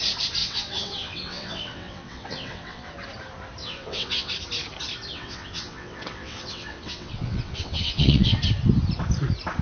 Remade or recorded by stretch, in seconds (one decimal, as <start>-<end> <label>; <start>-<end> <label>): 0.0-0.4 recorded; 0.4-2.9 remade; 2.9-3.6 recorded; 3.6-4.3 remade; 4.3-5.1 recorded; 5.1-8.4 remade; 8.4-9.6 recorded